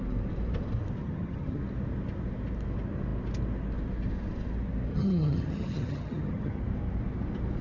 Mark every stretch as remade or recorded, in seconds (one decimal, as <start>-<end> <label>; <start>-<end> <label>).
0.0-1.0 recorded; 1.0-1.6 remade; 1.6-4.9 recorded; 4.9-6.6 remade; 6.6-7.6 recorded